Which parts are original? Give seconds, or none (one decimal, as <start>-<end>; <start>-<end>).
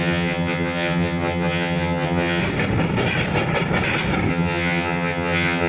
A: 2.4-4.3